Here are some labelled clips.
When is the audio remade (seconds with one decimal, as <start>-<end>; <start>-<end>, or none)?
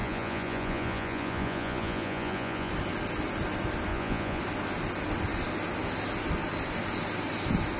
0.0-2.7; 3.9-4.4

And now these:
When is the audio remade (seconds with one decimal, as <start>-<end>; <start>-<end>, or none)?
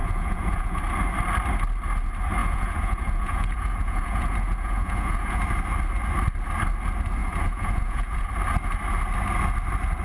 0.0-0.8; 2.4-5.4; 7.2-8.3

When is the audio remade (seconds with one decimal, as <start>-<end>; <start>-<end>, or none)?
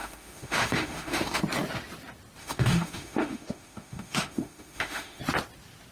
0.0-1.4; 2.4-5.2